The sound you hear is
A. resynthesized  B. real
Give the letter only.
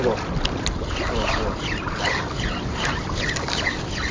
B